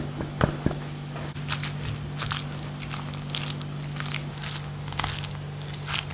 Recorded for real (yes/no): yes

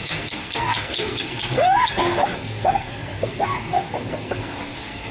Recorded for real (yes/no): no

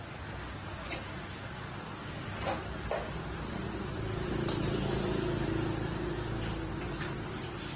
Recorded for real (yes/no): yes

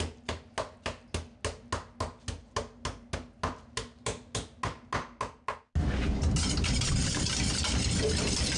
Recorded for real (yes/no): yes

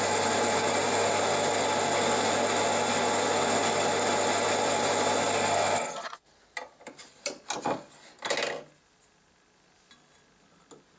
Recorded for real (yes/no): yes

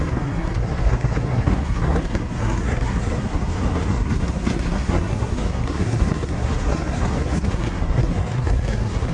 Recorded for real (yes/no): no